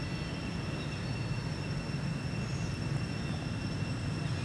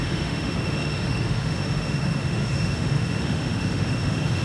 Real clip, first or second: first